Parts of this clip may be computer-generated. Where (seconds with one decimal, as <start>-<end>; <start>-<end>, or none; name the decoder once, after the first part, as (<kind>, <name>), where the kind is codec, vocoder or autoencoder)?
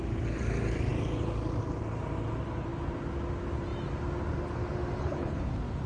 5.0-5.5 (codec, HILCodec)